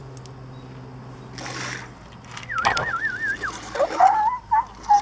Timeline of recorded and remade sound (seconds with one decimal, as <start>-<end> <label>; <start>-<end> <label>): 0.0-5.0 recorded

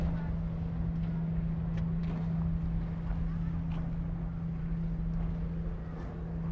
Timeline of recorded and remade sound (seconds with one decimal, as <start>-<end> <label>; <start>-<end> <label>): 0.0-6.5 recorded

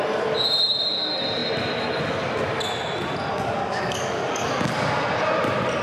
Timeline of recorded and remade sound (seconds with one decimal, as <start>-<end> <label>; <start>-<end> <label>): 0.0-3.3 recorded; 3.3-4.5 remade; 4.5-5.8 recorded